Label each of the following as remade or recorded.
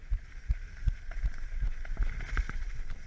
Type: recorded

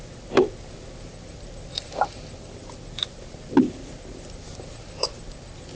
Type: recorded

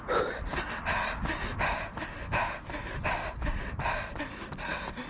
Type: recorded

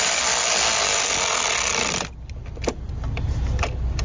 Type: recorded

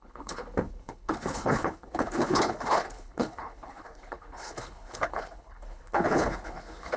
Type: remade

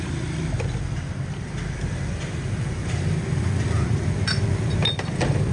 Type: remade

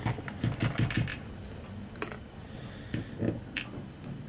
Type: recorded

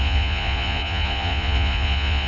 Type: remade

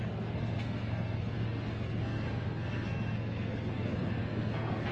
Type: remade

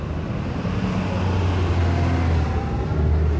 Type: recorded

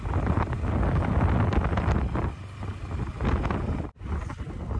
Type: recorded